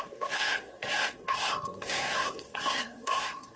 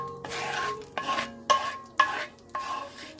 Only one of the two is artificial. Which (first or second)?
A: first